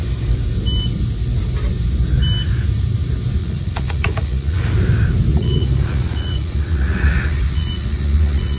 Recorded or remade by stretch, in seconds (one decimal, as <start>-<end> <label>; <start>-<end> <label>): 0.0-3.4 recorded; 3.4-4.7 remade; 4.7-5.3 recorded; 5.3-8.6 remade